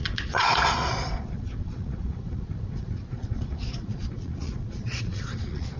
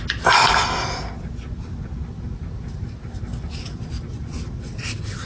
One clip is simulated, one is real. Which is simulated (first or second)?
first